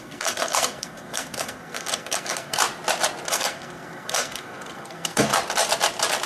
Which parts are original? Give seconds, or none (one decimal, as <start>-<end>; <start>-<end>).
2.6-3.3; 5.3-6.3